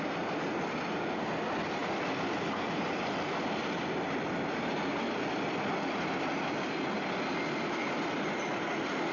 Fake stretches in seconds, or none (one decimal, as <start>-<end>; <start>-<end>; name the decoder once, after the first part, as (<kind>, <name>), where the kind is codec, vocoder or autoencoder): none